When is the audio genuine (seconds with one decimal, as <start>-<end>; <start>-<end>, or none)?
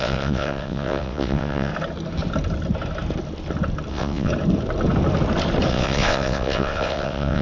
1.7-3.9; 4.3-5.7